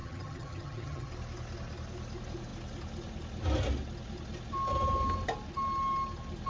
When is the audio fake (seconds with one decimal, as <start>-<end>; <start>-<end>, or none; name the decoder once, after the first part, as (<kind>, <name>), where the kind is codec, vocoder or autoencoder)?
0.0-1.1 (vocoder, HiFi-GAN)